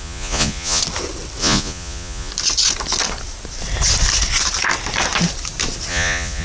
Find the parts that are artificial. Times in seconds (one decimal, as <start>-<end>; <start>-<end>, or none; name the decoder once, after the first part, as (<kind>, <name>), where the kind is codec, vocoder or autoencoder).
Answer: 0.0-0.8 (vocoder, Vocos); 1.4-2.3; 5.9-6.4